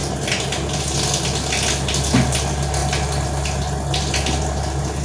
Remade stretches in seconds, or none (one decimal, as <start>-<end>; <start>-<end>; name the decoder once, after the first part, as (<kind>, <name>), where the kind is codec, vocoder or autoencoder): none